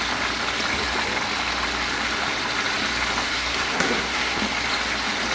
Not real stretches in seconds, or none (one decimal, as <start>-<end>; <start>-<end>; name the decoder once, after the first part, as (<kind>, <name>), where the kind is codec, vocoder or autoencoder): 3.3-4.4 (codec, SNAC)